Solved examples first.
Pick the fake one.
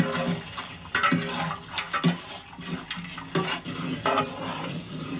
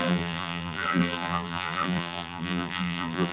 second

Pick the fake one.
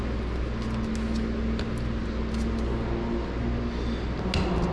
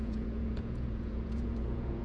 second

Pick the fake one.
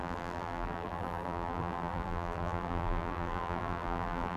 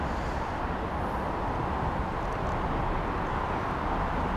first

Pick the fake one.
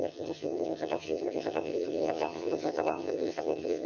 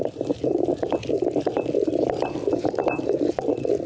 first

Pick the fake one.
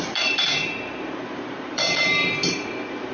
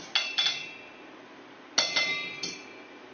first